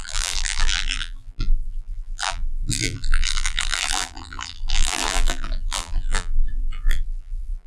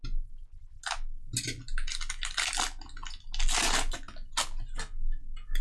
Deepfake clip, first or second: first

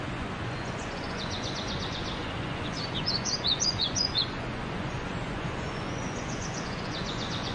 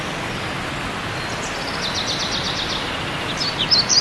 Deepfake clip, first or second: first